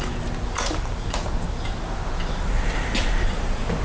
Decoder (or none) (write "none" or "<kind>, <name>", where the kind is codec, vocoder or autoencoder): none